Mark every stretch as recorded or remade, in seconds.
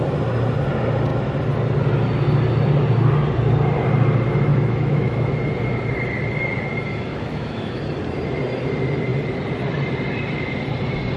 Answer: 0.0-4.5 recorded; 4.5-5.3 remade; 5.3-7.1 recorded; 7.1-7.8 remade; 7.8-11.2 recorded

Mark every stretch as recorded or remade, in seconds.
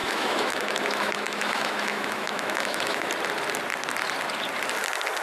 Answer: 0.0-3.1 remade; 3.1-5.2 recorded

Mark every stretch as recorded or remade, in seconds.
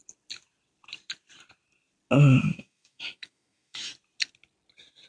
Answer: 0.0-2.4 recorded; 2.4-3.9 remade; 3.9-5.1 recorded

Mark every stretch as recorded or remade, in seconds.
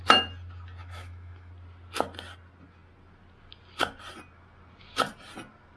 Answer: 0.0-0.8 recorded; 0.8-1.5 remade; 1.5-5.8 recorded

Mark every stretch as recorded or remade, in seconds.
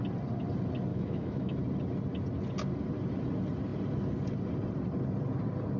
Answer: 0.0-0.9 recorded; 0.9-1.6 remade; 1.6-5.8 recorded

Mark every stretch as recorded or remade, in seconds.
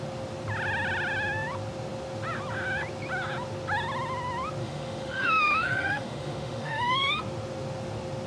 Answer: 0.0-4.6 recorded; 4.6-7.2 remade; 7.2-8.3 recorded